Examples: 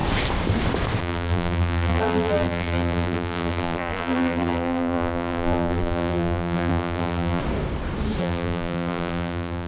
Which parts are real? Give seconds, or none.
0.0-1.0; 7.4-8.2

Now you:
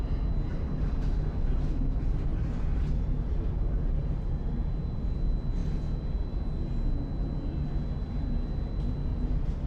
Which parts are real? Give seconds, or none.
0.0-0.5; 1.1-2.3; 5.1-9.1

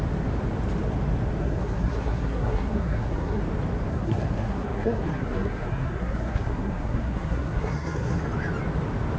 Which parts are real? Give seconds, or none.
0.0-1.4; 3.4-3.9; 8.2-9.2

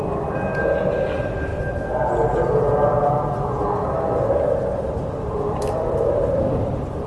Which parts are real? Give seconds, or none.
0.0-7.1